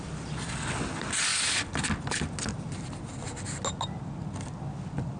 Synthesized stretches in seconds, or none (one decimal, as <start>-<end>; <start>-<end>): none